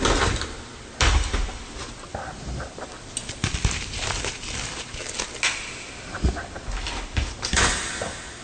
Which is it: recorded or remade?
recorded